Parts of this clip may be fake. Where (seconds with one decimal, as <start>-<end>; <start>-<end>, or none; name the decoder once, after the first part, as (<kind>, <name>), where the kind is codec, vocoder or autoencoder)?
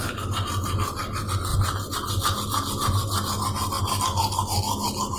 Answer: none